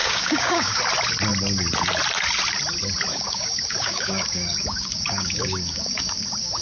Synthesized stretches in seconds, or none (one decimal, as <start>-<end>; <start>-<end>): 0.0-0.8; 3.1-6.6